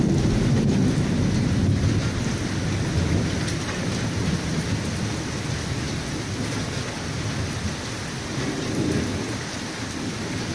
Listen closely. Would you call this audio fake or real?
real